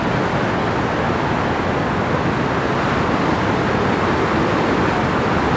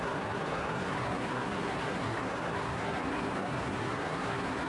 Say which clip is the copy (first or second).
second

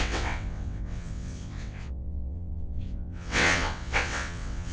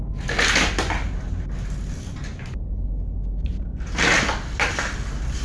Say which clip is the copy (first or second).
first